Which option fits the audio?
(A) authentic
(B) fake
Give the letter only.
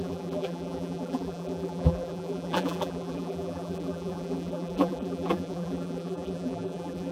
B